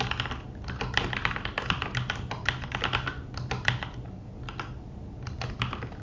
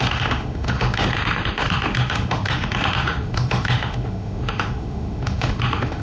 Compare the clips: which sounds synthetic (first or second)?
second